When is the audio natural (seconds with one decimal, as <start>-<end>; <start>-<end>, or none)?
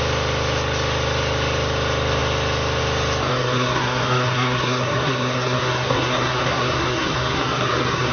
0.0-3.3